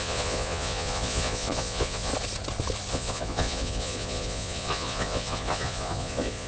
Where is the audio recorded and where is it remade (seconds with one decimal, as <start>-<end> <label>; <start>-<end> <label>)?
0.0-2.1 remade; 2.1-2.9 recorded; 2.9-6.5 remade